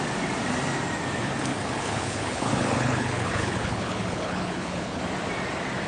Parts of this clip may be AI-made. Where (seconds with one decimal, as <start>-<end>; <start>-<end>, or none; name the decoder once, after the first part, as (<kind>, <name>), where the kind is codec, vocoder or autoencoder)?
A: 1.5-5.0 (codec, HILCodec)